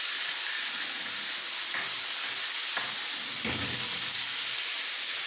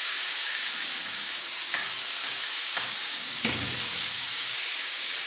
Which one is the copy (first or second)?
second